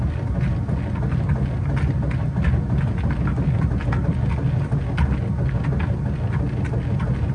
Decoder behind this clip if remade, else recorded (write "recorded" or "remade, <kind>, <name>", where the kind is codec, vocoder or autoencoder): recorded